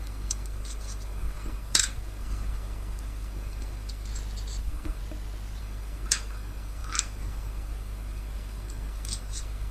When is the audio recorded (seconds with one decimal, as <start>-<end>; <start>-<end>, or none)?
4.1-4.6; 5.0-5.6